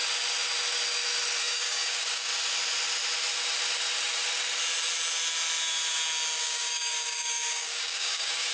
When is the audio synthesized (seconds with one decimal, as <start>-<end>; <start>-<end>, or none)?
1.4-2.3; 6.4-8.5